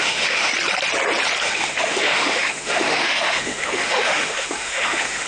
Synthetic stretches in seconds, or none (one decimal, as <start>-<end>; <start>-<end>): 0.0-0.5; 1.4-5.3

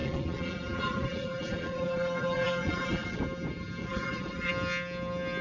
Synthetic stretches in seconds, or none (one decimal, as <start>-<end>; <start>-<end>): 0.0-3.2; 3.8-4.5